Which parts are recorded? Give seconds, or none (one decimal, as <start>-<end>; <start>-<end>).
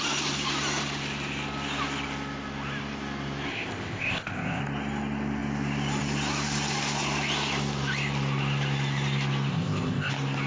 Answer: 0.0-3.5; 4.6-9.5; 10.1-10.5